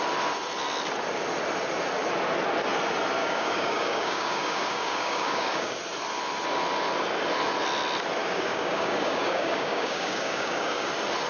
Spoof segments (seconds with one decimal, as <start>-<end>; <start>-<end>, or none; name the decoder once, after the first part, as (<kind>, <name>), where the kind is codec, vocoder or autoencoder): 3.2-5.8 (codec, DAC); 8.2-10.9